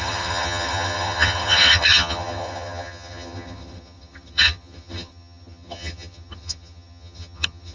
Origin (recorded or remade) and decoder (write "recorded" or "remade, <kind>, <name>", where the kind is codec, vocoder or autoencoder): remade, vocoder, HiFi-GAN